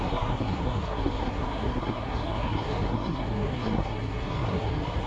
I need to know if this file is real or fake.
fake